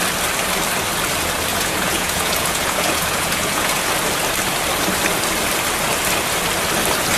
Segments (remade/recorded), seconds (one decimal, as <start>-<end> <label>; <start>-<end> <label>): 0.0-1.5 recorded; 1.5-3.9 remade; 3.9-7.2 recorded